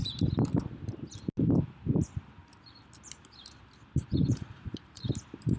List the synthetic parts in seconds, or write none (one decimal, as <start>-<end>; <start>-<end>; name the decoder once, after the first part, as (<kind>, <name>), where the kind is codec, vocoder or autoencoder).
4.3-5.1 (vocoder, Vocos)